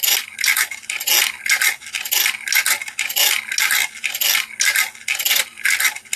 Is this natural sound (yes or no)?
yes